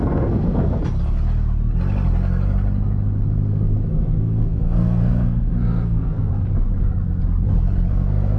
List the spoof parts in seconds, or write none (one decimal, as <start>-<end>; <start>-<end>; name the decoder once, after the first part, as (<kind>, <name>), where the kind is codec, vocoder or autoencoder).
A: 0.0-0.8 (codec, SNAC); 3.9-6.3; 7.9-8.4